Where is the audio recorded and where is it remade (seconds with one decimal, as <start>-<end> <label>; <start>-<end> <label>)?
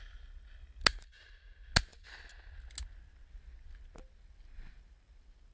0.0-5.5 recorded